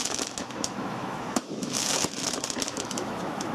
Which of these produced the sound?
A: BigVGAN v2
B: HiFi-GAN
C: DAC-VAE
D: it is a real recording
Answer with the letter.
C